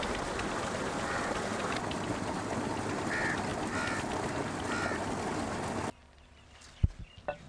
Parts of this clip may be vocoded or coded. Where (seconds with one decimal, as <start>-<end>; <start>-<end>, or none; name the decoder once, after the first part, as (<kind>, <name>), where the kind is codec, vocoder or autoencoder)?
none